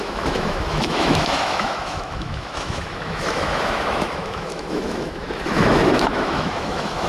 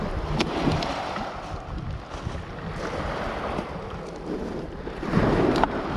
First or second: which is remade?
first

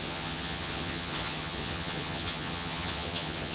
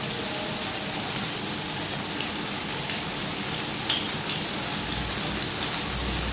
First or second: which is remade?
first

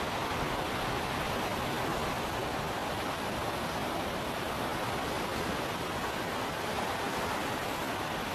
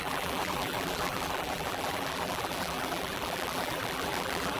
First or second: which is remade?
second